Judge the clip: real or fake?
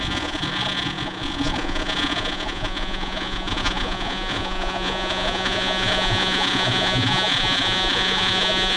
fake